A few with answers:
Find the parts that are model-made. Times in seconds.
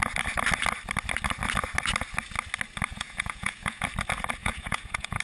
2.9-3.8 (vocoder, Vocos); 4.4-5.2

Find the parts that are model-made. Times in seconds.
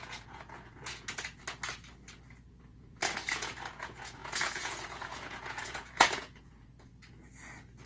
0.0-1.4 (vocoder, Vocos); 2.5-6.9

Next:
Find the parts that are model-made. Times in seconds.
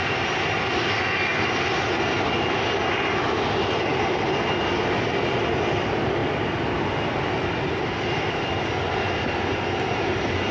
none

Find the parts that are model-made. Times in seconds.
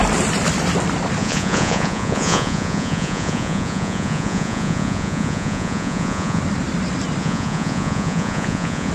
1.2-6.4 (vocoder, Vocos); 7.2-8.9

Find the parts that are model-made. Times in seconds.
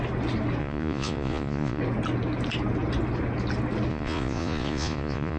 0.6-1.8 (vocoder, Vocos); 3.9-5.4